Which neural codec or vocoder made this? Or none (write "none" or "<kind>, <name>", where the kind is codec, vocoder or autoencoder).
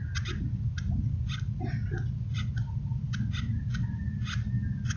none